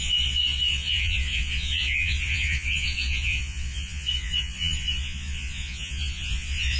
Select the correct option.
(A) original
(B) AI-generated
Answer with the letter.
B